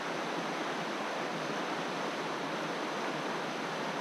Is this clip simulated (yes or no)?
no